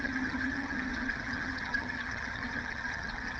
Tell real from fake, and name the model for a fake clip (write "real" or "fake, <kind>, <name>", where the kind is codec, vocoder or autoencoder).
fake, vocoder, HiFi-GAN